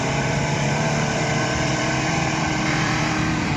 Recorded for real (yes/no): no